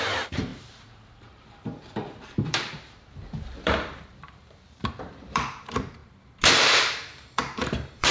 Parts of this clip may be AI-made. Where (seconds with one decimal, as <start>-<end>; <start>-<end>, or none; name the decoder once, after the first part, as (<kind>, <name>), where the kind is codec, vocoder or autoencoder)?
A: 0.0-6.0 (vocoder, BigVGAN v2); 6.8-8.1